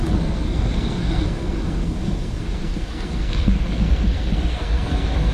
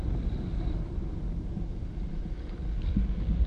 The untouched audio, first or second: second